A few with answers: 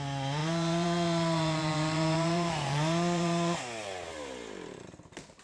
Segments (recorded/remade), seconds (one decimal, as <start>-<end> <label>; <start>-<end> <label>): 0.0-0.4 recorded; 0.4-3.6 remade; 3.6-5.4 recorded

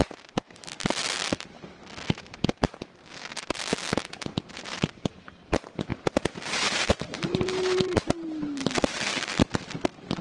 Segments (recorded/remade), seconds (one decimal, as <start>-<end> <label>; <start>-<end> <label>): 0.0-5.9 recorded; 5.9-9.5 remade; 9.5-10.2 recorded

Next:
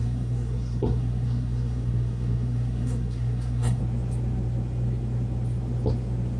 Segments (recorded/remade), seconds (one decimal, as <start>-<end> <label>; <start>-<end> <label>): 0.0-3.8 remade; 3.8-6.4 recorded

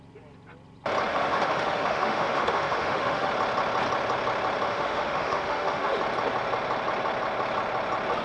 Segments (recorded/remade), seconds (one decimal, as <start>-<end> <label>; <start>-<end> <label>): 0.0-1.1 recorded; 1.1-3.3 remade; 3.3-4.7 recorded; 4.7-6.0 remade; 6.0-8.2 recorded